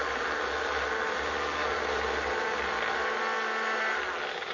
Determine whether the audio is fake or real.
real